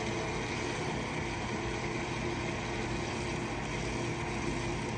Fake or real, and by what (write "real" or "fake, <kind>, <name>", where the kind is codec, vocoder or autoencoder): real